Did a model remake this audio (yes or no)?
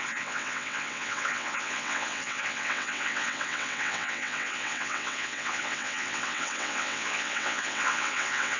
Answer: yes